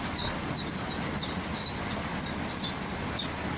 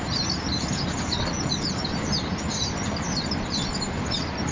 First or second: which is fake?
second